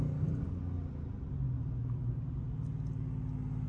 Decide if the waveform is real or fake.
real